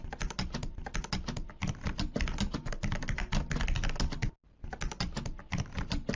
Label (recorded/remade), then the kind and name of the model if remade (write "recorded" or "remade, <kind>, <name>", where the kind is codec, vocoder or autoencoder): recorded